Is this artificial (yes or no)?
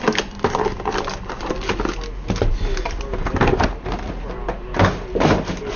no